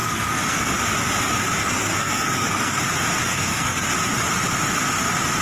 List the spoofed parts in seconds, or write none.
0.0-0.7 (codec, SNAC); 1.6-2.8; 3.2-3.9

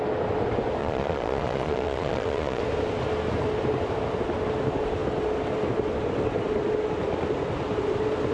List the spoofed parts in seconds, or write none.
0.8-2.6 (vocoder, Vocos)

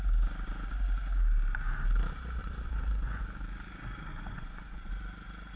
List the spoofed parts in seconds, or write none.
2.4-3.2 (vocoder, Vocos); 4.1-4.9

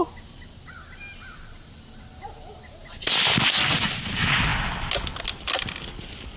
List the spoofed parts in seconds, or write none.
none

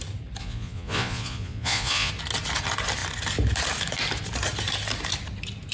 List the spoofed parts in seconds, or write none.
0.4-2.1 (vocoder, Vocos)

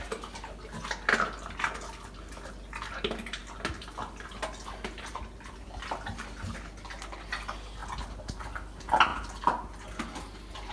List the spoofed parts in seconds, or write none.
none

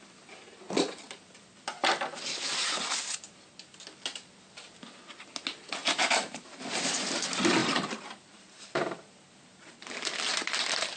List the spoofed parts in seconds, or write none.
5.8-6.6 (vocoder, BigVGAN v2); 7.6-9.9